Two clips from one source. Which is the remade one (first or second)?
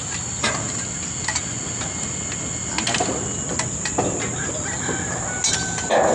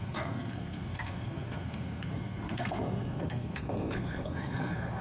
second